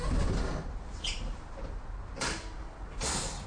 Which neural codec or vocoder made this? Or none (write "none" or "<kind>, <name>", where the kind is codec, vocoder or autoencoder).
none